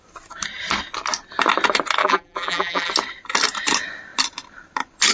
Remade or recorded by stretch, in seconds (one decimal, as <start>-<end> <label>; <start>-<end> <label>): 0.0-2.0 recorded; 2.0-2.9 remade; 2.9-5.1 recorded